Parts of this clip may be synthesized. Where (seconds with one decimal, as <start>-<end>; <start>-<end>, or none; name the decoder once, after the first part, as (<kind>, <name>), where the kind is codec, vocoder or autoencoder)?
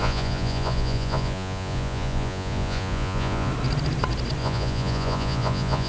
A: 0.0-3.5 (vocoder, Vocos); 4.4-5.9